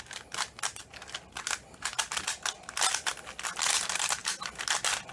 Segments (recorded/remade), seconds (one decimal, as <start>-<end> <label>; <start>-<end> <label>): 0.0-5.1 recorded